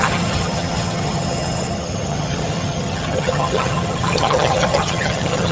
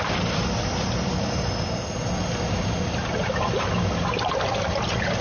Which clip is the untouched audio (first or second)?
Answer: second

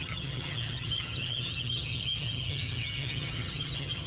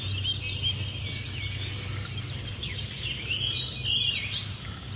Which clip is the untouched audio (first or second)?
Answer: second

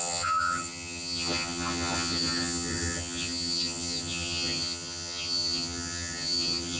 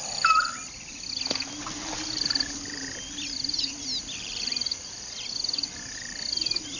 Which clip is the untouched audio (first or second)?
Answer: second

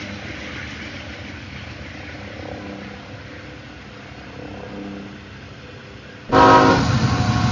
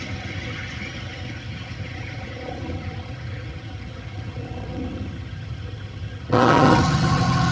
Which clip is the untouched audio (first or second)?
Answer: first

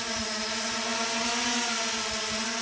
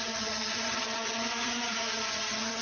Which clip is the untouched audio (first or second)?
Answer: first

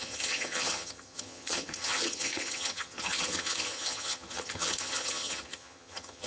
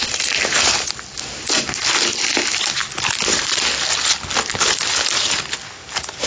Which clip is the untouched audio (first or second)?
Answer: second